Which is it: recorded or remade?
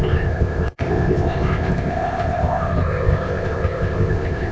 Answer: remade